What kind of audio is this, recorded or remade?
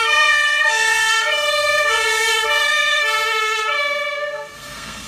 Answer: remade